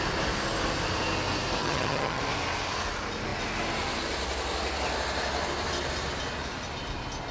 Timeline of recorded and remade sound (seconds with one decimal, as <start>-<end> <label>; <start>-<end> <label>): 0.0-1.6 recorded; 1.6-2.2 remade; 2.2-7.3 recorded